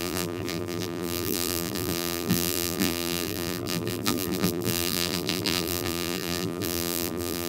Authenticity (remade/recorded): remade